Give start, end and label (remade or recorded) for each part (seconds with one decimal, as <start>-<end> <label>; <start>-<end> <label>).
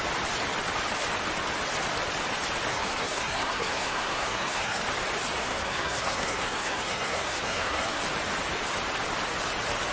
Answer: 0.0-2.7 recorded; 2.7-4.8 remade; 4.8-5.4 recorded; 5.4-8.0 remade; 8.0-9.9 recorded